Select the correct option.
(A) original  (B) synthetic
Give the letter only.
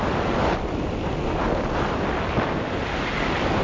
A